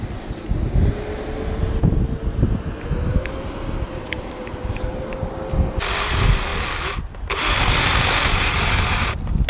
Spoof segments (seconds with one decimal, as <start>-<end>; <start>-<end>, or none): none